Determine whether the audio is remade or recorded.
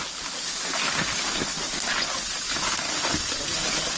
recorded